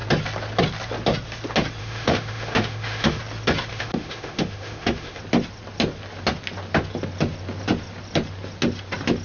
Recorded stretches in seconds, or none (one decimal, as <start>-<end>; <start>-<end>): 0.0-1.8; 3.2-3.7; 5.2-9.2